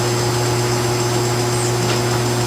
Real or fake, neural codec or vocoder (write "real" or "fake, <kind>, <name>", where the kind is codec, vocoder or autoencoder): real